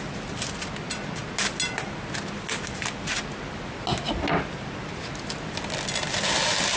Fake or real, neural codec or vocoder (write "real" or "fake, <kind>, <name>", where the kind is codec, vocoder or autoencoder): real